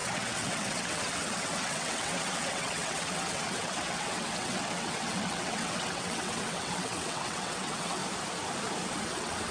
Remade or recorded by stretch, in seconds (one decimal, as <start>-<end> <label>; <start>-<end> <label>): 0.0-8.0 remade; 8.0-9.0 recorded; 9.0-9.5 remade